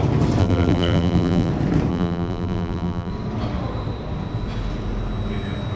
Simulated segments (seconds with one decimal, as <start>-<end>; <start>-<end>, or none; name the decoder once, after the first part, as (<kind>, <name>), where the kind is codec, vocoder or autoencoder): 0.4-1.5 (vocoder, BigVGAN v2); 1.9-3.1

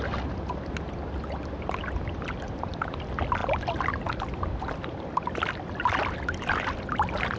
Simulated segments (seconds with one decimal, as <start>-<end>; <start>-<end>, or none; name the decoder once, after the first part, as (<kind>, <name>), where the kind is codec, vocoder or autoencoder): none

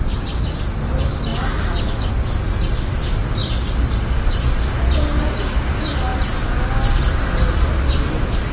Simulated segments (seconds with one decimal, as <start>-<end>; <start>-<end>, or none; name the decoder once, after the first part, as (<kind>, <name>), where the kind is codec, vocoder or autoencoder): 0.0-3.4 (vocoder, BigVGAN v2); 4.2-8.5

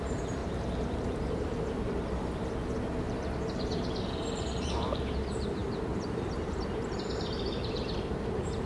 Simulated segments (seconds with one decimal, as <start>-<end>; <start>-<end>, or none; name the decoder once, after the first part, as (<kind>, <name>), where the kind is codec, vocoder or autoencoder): 0.0-0.4 (vocoder, BigVGAN v2); 3.0-8.7

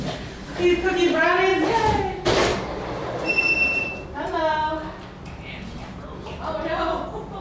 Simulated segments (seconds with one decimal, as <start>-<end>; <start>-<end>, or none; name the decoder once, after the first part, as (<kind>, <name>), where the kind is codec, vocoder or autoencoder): 2.5-3.3 (vocoder, BigVGAN v2); 3.7-4.4

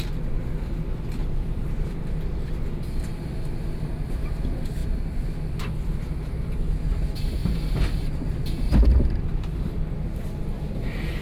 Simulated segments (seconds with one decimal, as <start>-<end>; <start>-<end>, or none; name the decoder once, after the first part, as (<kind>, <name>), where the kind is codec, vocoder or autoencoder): 1.2-2.0 (vocoder, BigVGAN v2); 7.4-10.4

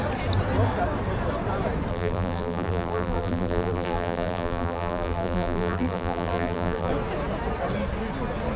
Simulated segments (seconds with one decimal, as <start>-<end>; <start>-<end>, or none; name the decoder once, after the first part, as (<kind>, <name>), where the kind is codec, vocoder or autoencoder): 1.9-6.9 (vocoder, BigVGAN v2)